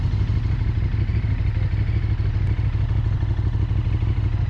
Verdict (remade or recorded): recorded